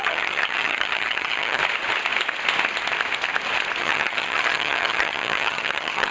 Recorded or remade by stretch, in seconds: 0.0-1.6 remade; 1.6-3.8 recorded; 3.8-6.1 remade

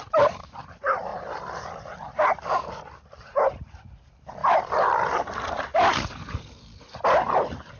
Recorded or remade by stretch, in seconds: 0.0-7.8 remade

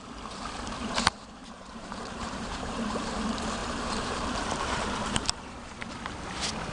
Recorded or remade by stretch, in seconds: 0.0-0.8 recorded; 0.8-3.1 remade; 3.1-3.6 recorded; 3.6-5.9 remade; 5.9-6.7 recorded

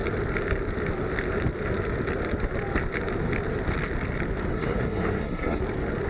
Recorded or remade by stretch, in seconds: 0.0-4.5 recorded; 4.5-5.6 remade; 5.6-6.1 recorded

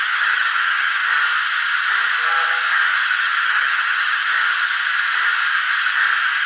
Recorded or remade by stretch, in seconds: 0.0-1.0 remade; 1.0-3.2 recorded; 3.2-4.2 remade; 4.2-6.5 recorded